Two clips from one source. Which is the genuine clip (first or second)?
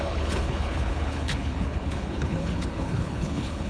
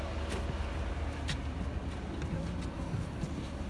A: second